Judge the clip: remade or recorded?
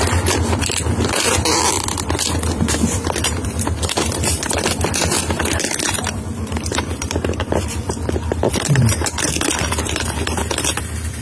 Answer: remade